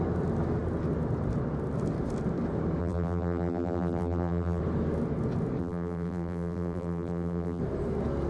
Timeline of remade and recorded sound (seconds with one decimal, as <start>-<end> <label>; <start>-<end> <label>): 0.0-2.8 recorded; 2.8-4.6 remade; 4.6-5.6 recorded; 5.6-7.6 remade; 7.6-8.3 recorded